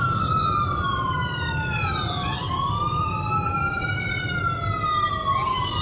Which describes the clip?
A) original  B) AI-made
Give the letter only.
A